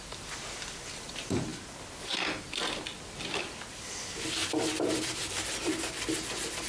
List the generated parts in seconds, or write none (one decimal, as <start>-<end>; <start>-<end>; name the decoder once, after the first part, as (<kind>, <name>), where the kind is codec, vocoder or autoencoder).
4.4-5.7 (vocoder, BigVGAN v2)